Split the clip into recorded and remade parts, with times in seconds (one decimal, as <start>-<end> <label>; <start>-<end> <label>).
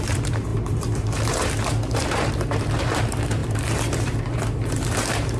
0.0-5.4 remade